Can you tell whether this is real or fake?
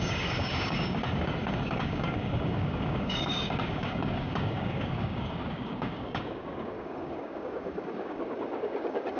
fake